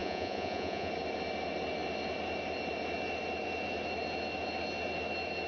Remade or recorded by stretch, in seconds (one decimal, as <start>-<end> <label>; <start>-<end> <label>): 0.0-0.9 remade; 0.9-5.5 recorded